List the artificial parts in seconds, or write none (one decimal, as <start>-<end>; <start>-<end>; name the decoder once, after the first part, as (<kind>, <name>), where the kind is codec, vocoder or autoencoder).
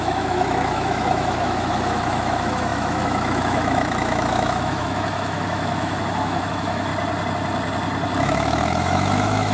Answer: 0.0-6.9 (autoencoder, DAC-VAE); 8.2-9.5